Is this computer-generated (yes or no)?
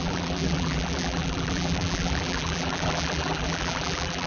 yes